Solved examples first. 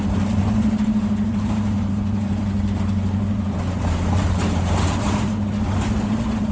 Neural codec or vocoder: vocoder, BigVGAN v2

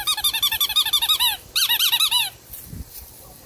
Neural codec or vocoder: vocoder, BigVGAN v2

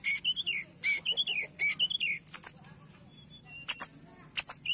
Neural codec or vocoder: none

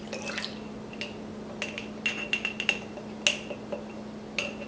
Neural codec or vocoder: none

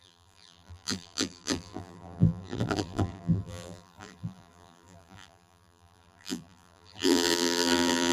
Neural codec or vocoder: vocoder, BigVGAN v2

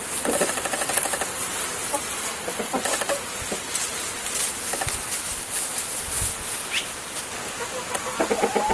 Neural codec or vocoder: none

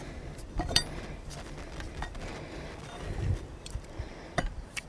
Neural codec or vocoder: vocoder, BigVGAN v2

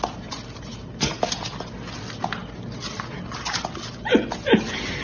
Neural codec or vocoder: none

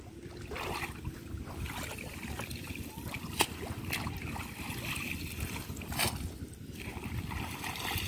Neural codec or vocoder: none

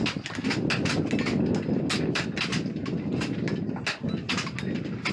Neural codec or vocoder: none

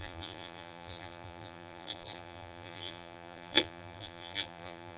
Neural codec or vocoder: vocoder, BigVGAN v2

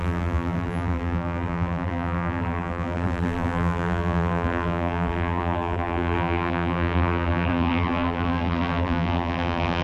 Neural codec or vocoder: vocoder, BigVGAN v2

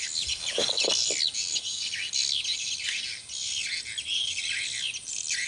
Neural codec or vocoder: none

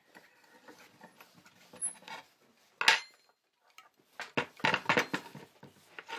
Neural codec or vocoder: none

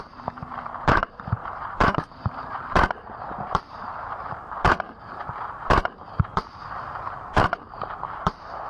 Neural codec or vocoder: vocoder, BigVGAN v2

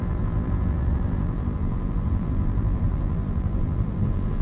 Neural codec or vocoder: vocoder, BigVGAN v2